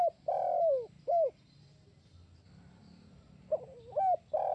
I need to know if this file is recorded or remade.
recorded